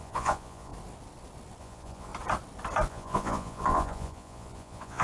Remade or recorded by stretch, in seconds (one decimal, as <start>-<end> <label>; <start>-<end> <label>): 0.0-0.7 remade; 0.7-1.6 recorded; 1.6-2.1 remade; 2.1-2.9 recorded; 2.9-5.0 remade